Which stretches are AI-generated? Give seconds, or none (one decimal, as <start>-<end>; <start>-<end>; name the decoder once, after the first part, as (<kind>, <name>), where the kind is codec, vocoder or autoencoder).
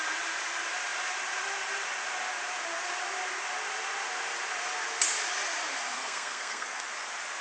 5.9-6.8 (codec, SNAC)